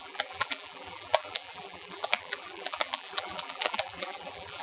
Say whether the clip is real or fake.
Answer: fake